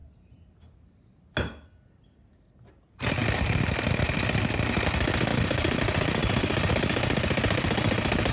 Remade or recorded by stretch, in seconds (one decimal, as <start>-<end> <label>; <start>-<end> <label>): 0.0-5.3 recorded; 5.3-5.8 remade; 5.8-6.2 recorded; 6.2-6.7 remade; 6.7-8.3 recorded